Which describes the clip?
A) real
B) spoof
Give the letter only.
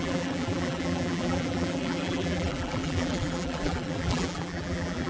B